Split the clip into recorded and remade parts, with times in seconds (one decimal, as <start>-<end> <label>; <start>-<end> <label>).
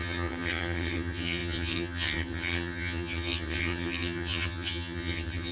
0.0-5.5 remade